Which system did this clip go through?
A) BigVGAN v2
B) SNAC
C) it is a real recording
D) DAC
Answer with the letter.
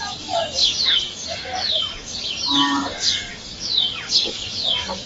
D